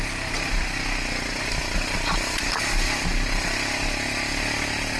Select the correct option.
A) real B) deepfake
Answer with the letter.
A